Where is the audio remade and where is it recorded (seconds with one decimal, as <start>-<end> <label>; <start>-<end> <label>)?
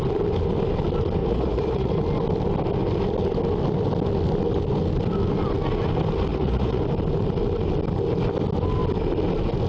0.0-1.2 recorded; 1.2-1.9 remade; 1.9-6.3 recorded; 6.3-6.8 remade; 6.8-9.7 recorded